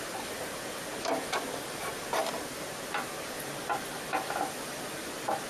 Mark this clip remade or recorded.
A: recorded